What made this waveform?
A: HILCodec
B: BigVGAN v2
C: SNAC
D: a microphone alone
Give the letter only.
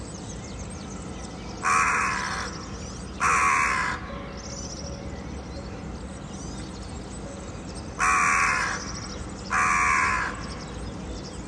D